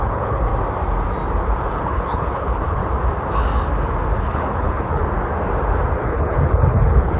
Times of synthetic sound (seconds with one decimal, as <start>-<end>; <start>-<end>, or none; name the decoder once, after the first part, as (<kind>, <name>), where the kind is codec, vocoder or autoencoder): 0.0-0.5 (codec, HILCodec); 1.7-2.8; 4.2-5.0; 6.0-7.2